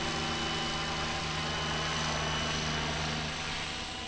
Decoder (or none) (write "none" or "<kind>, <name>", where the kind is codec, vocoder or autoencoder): none